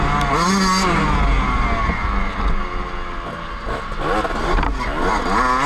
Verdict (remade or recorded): recorded